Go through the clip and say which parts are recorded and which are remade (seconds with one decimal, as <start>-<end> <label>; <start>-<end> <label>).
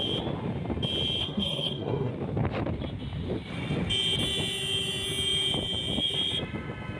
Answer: 0.0-1.2 recorded; 1.2-2.1 remade; 2.1-7.0 recorded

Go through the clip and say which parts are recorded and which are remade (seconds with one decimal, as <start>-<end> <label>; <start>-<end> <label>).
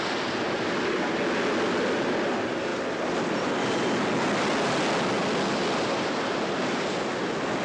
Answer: 0.0-7.6 recorded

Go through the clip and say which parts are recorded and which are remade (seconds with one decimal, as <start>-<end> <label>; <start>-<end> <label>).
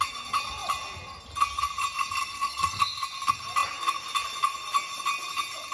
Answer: 0.0-2.2 recorded; 2.2-2.8 remade; 2.8-5.7 recorded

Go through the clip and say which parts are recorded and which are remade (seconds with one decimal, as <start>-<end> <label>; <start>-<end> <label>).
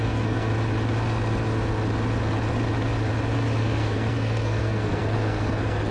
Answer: 0.0-0.5 remade; 0.5-3.6 recorded; 3.6-5.9 remade